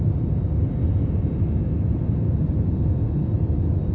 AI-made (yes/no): no